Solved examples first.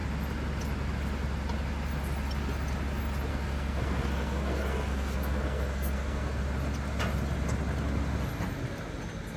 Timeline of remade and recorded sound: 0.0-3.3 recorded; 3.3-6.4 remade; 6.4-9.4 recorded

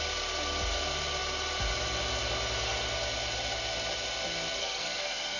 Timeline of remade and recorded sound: 0.0-4.6 recorded; 4.6-5.4 remade

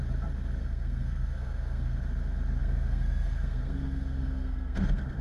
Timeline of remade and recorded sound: 0.0-0.6 recorded; 0.6-2.0 remade; 2.0-2.6 recorded; 2.6-5.2 remade

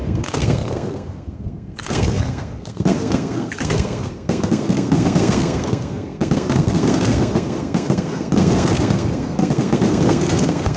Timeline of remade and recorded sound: 0.0-10.8 remade

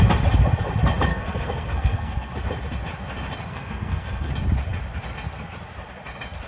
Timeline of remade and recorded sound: 0.0-1.1 recorded; 1.1-2.3 remade; 2.3-3.5 recorded; 3.5-4.3 remade; 4.3-6.5 recorded

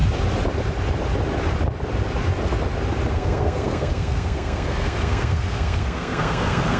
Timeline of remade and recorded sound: 0.0-3.1 recorded; 3.1-6.8 remade

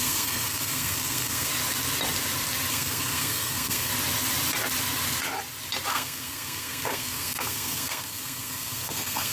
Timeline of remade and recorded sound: 0.0-1.5 remade; 1.5-2.7 recorded; 2.7-3.9 remade; 3.9-5.9 recorded; 5.9-9.3 remade